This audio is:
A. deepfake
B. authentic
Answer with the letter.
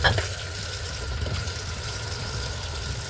B